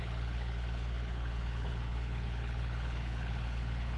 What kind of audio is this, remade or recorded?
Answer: remade